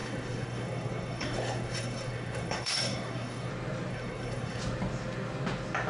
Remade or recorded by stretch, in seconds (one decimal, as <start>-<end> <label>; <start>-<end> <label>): 0.0-3.5 remade; 3.5-3.9 recorded; 3.9-4.6 remade; 4.6-5.9 recorded